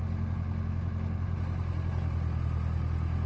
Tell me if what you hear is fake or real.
real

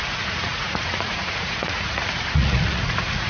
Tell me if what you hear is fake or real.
fake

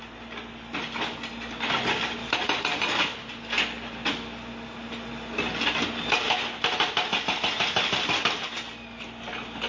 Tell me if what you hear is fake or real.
real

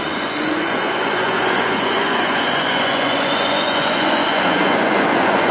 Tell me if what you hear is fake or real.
fake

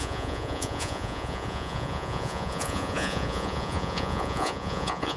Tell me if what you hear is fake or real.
fake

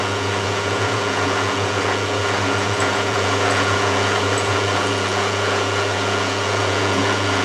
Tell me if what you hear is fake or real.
fake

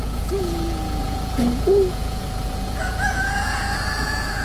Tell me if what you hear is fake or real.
fake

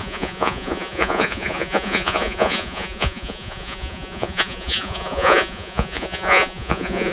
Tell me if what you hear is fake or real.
fake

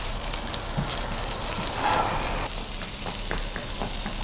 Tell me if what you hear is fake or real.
real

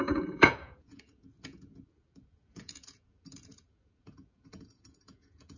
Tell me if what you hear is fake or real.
fake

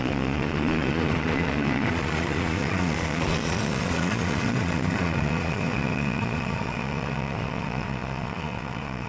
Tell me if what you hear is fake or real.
fake